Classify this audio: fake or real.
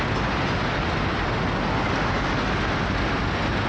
real